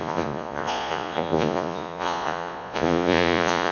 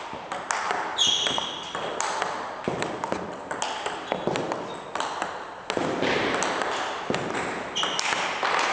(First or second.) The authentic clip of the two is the second